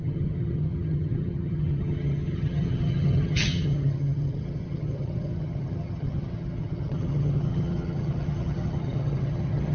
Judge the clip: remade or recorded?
remade